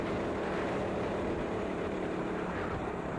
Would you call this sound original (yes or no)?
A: no